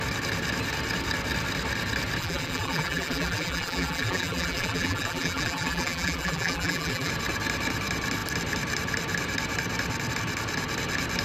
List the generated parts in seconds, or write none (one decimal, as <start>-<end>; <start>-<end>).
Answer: 2.2-7.1